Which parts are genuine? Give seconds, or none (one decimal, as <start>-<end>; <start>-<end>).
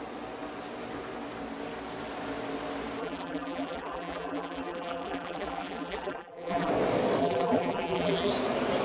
0.0-3.0; 6.7-7.2; 8.3-8.8